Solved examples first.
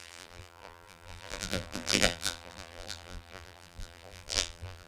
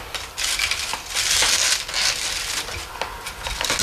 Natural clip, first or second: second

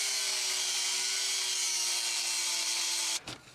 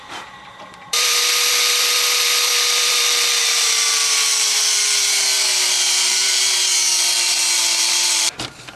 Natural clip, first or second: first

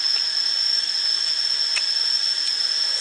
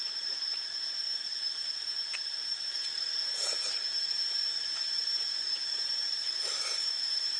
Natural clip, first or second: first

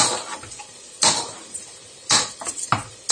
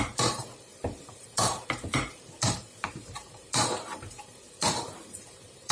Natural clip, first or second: first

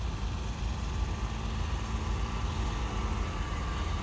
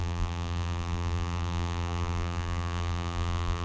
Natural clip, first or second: first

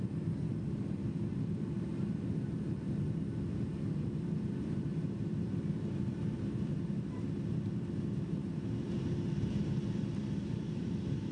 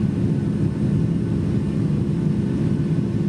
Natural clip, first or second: second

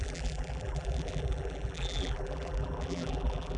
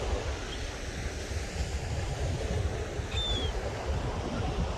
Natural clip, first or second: second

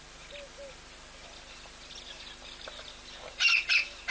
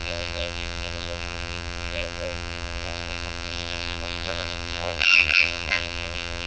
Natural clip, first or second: first